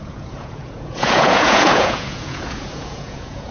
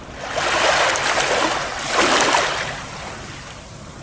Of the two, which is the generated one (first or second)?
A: first